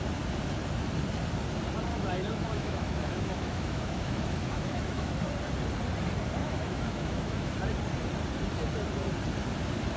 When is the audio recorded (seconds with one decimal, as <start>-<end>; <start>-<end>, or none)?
0.0-1.9; 5.1-6.4; 7.5-10.0